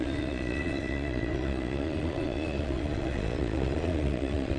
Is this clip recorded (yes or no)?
no